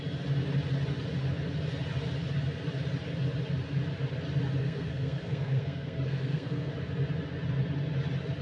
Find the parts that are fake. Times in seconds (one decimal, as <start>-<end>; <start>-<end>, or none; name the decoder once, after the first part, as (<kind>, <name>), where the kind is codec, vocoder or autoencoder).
4.6-6.7 (codec, SNAC)